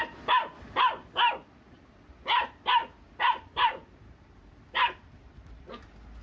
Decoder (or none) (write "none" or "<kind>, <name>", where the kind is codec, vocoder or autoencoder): none